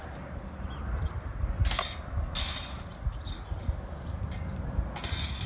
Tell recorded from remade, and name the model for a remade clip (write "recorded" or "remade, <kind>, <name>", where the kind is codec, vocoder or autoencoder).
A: recorded